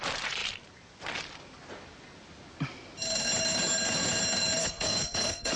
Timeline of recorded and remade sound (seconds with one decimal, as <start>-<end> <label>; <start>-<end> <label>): 0.0-4.6 recorded; 4.6-5.6 remade